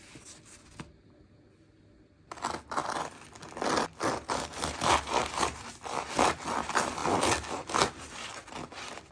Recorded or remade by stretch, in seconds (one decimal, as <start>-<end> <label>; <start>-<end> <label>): 0.0-9.1 recorded